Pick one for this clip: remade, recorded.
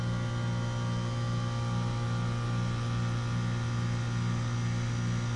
recorded